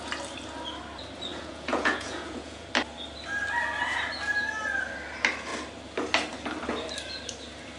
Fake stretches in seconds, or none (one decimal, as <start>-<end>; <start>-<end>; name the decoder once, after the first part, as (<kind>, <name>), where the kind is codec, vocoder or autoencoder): 1.3-2.7 (vocoder, Vocos)